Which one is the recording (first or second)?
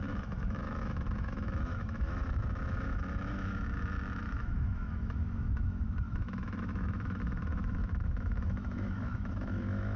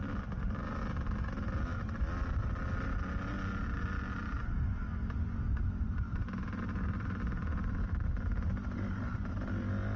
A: second